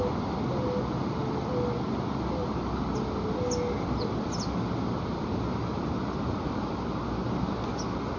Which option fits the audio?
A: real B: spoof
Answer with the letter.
A